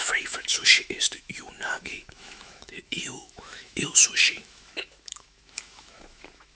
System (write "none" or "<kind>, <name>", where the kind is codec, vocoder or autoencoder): autoencoder, DAC-VAE